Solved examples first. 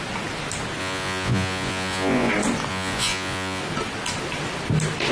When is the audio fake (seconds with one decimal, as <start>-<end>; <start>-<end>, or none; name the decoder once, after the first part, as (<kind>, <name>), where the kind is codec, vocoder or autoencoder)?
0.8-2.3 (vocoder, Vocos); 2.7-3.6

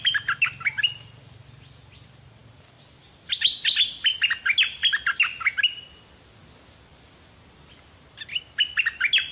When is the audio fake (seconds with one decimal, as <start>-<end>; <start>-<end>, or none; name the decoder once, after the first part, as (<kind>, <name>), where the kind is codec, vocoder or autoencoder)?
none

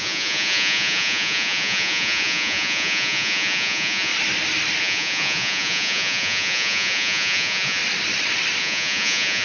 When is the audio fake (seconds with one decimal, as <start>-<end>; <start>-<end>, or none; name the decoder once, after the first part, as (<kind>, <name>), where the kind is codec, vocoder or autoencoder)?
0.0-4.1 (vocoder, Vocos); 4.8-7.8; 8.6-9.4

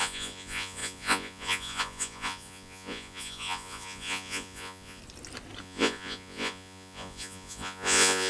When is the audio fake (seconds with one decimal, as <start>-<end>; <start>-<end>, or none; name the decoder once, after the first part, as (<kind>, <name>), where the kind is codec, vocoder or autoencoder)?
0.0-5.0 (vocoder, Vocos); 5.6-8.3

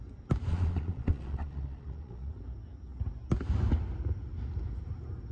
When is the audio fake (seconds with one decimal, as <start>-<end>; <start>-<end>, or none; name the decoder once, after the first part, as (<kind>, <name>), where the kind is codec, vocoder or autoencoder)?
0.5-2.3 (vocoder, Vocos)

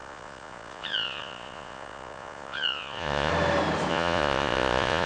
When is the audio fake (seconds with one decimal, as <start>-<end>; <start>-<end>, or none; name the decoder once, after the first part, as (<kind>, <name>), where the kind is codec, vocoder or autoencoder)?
0.0-3.3 (vocoder, Vocos); 3.9-5.1

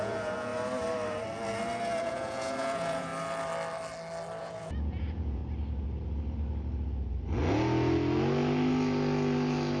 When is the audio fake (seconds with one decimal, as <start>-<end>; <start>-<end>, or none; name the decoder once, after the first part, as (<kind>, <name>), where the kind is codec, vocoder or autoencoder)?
0.0-0.5 (vocoder, Vocos); 2.0-3.1; 4.4-5.4